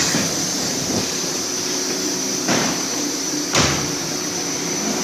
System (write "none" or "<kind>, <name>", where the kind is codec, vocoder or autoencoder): vocoder, BigVGAN v2